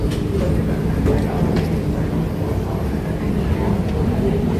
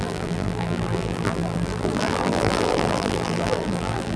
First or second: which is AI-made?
second